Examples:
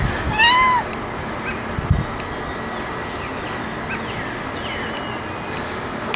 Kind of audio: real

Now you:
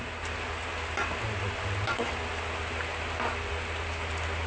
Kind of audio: real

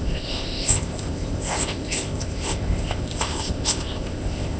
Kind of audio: fake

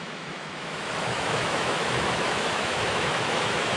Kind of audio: fake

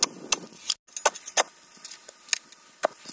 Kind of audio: real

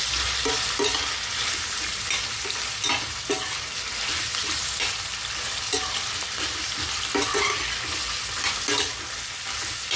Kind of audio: real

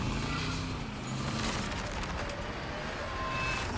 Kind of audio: real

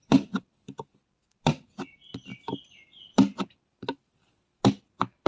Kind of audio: real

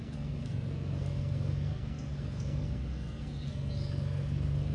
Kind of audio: fake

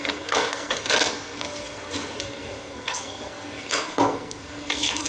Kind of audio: fake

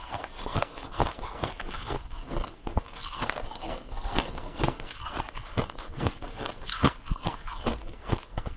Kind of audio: fake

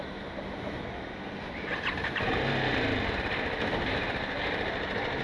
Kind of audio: real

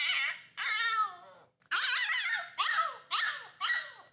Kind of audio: real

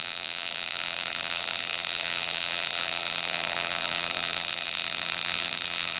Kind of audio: fake